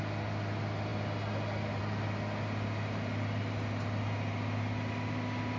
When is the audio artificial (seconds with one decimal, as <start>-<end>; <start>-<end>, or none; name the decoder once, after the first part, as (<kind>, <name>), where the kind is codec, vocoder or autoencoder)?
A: none